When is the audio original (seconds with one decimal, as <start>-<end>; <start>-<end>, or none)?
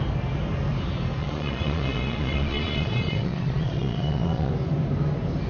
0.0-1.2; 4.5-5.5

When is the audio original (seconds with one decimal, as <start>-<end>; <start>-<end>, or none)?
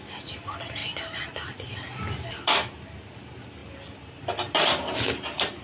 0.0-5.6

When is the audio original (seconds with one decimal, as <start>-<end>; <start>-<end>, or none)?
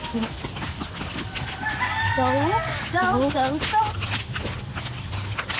0.0-5.6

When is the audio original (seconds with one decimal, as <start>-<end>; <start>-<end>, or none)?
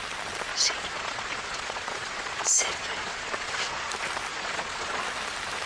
0.0-0.5; 3.9-4.3; 5.0-5.7